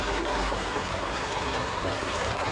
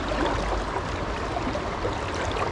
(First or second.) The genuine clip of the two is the second